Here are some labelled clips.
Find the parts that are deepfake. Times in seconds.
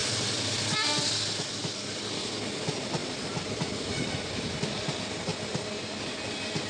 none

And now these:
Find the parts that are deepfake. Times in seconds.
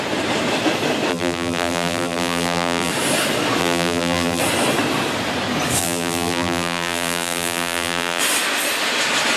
1.1-2.9; 3.6-4.4; 5.8-8.2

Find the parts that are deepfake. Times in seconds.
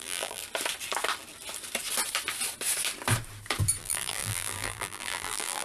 0.0-0.4; 3.8-5.6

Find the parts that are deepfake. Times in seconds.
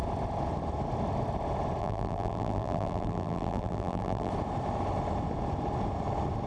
1.8-4.3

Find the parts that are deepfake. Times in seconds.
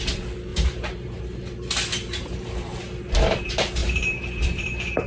0.5-1.2; 1.9-2.8; 3.8-5.1